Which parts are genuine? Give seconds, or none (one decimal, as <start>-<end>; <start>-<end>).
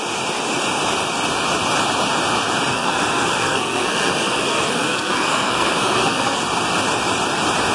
0.0-2.7; 6.4-7.7